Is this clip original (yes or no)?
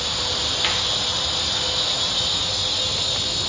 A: yes